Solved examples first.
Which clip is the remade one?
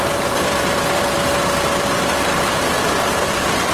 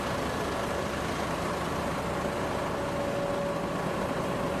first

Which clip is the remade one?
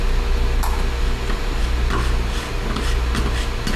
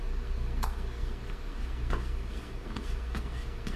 second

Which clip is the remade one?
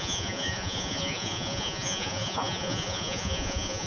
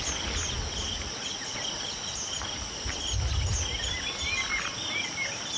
first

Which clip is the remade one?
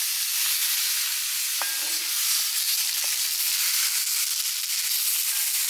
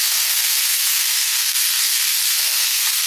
second